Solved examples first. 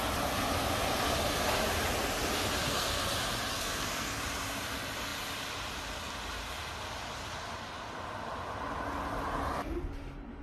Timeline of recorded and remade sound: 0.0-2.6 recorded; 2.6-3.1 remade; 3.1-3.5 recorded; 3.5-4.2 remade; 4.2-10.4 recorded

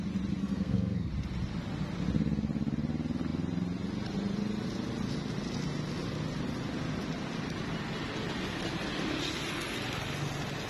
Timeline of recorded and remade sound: 0.0-0.4 recorded; 0.4-1.1 remade; 1.1-10.7 recorded